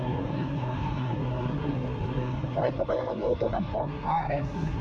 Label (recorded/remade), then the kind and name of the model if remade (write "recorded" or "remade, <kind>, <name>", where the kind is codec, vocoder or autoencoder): remade, codec, SNAC